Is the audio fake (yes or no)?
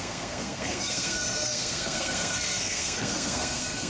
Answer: yes